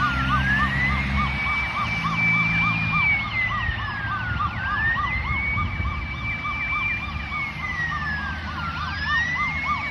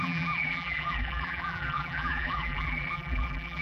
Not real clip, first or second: second